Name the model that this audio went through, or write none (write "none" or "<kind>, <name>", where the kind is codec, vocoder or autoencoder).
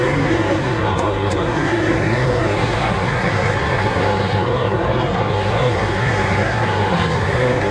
codec, SNAC